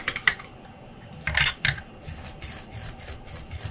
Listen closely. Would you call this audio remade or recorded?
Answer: remade